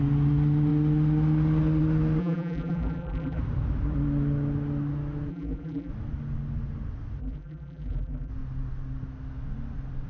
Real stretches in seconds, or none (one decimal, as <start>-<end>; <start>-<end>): 0.0-2.2; 3.4-5.3; 5.9-7.2; 8.3-10.1